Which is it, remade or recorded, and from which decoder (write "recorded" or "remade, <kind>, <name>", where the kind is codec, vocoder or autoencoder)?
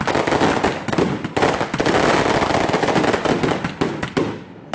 recorded